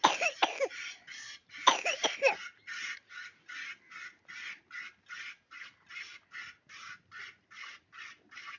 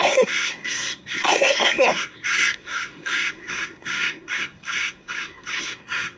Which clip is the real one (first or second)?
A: first